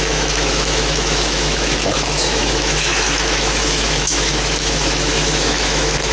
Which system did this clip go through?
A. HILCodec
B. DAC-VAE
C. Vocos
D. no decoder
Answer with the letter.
B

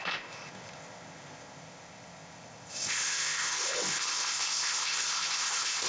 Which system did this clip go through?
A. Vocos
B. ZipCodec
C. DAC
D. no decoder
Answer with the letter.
B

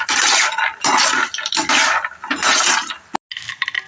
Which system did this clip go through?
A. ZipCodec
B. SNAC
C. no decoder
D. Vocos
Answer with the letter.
C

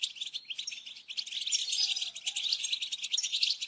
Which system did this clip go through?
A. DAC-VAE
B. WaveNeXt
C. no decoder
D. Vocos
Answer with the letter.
C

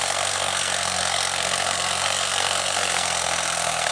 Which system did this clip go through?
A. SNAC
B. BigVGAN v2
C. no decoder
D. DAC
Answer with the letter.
A